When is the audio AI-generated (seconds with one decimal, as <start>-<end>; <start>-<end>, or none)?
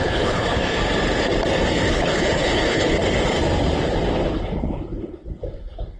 0.0-0.8; 1.7-3.0